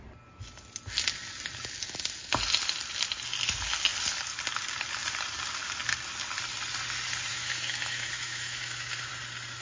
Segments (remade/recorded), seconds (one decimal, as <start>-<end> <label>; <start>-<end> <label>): 0.0-7.3 recorded; 7.3-9.1 remade; 9.1-9.6 recorded